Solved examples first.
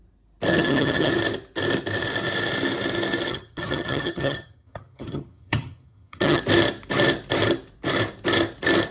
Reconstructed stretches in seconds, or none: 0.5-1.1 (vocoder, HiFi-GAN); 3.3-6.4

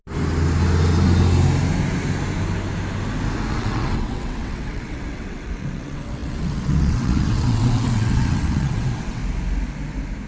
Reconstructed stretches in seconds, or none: 3.5-9.2 (vocoder, WaveNeXt)